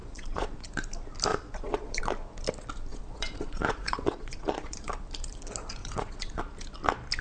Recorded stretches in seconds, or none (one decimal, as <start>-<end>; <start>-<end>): 0.7-1.3; 2.0-2.9; 4.9-5.8; 6.4-7.2